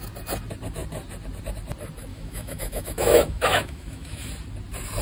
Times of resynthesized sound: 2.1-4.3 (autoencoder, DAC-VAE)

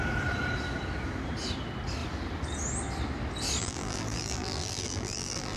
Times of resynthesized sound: 3.6-5.6 (vocoder, BigVGAN v2)

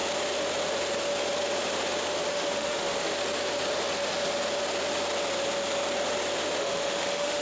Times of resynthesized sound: 2.3-3.1 (autoencoder, DAC-VAE); 6.6-7.4

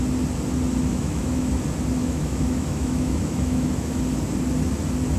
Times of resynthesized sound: 0.9-1.5 (autoencoder, DAC-VAE); 2.0-4.0